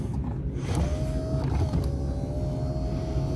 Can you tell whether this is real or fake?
real